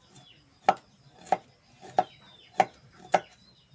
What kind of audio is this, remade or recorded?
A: recorded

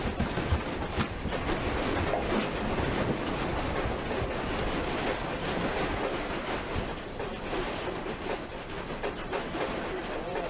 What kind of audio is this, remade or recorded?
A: recorded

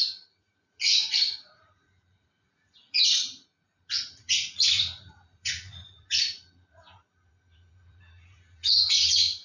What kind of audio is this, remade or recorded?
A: remade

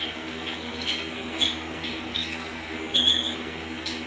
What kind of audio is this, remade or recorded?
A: remade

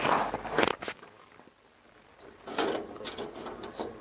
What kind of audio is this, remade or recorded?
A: recorded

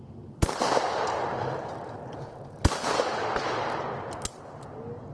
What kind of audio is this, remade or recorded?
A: recorded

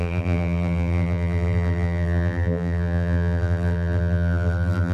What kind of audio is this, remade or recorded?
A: remade